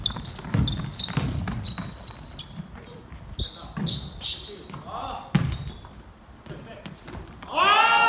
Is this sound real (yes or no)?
yes